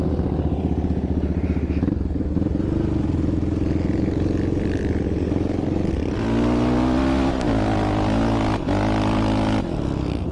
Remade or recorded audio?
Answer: recorded